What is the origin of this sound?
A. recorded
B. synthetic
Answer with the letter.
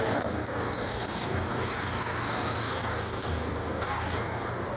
B